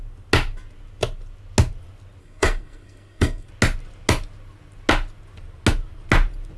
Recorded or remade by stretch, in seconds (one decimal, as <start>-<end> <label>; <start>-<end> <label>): 0.0-2.2 recorded; 2.2-3.5 remade; 3.5-6.6 recorded